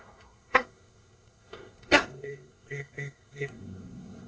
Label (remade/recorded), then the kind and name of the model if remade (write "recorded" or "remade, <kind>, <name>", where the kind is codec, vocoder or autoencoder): remade, codec, SNAC